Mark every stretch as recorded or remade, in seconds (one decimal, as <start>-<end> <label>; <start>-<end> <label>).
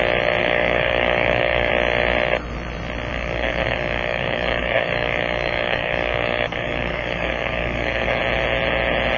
0.0-0.4 recorded; 0.4-1.7 remade; 1.7-3.1 recorded; 3.1-8.2 remade; 8.2-9.2 recorded